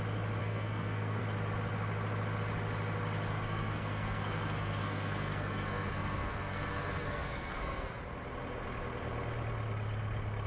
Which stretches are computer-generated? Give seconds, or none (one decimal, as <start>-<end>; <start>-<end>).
0.4-1.2; 3.3-8.0